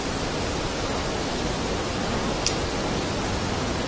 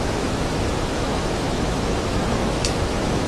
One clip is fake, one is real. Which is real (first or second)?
first